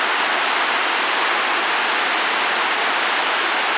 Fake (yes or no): no